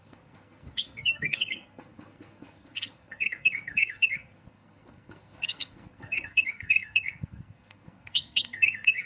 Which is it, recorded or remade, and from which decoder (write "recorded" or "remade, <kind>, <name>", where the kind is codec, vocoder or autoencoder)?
remade, codec, SNAC